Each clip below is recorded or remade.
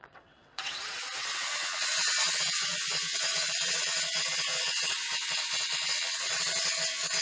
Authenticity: remade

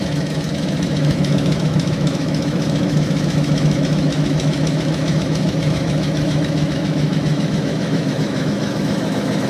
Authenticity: remade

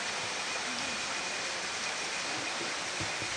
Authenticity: recorded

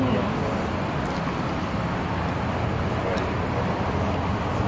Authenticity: recorded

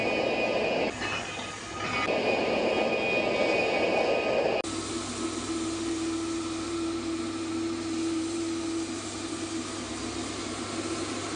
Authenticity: recorded